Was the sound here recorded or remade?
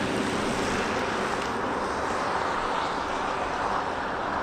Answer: recorded